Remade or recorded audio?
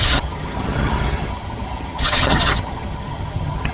remade